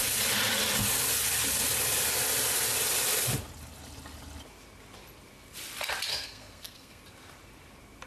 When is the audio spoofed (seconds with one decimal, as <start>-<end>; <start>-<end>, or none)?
6.1-7.0

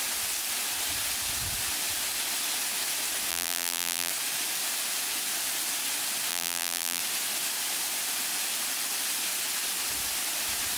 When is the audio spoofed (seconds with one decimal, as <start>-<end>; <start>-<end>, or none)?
3.3-4.1; 6.3-7.0

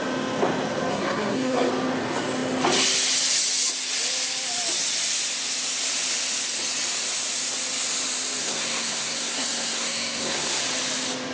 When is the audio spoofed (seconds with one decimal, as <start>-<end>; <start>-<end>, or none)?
0.9-1.7; 8.4-10.6

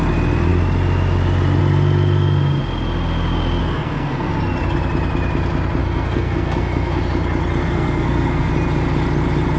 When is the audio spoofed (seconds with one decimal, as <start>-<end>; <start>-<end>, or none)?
3.6-4.3; 5.8-7.0; 7.6-8.5